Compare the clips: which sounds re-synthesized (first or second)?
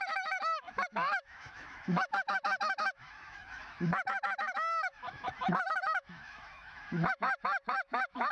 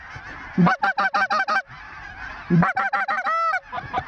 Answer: first